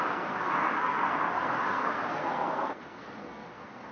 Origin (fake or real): fake